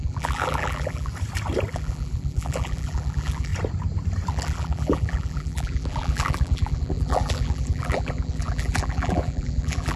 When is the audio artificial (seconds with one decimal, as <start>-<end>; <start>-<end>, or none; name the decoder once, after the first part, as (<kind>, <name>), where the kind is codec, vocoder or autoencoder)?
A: 0.0-1.1 (vocoder, BigVGAN v2); 1.7-3.5; 4.3-10.0